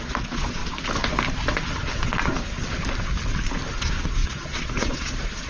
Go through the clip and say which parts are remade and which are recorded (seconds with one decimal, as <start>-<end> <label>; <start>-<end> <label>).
0.0-0.6 remade; 0.6-3.7 recorded; 3.7-5.5 remade